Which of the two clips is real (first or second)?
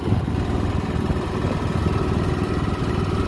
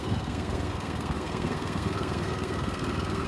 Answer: first